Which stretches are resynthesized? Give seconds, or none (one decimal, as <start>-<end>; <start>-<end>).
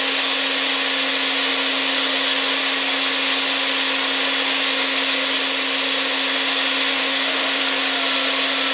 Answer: 7.0-7.6